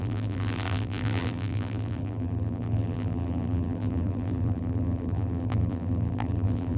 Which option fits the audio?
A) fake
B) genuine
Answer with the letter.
A